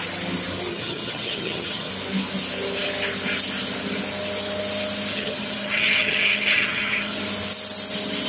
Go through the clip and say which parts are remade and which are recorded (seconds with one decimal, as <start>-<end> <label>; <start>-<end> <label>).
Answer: 0.0-0.7 recorded; 0.7-1.9 remade; 1.9-5.1 recorded; 5.1-7.2 remade; 7.2-8.3 recorded